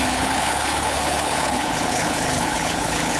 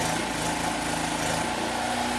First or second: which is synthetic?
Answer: first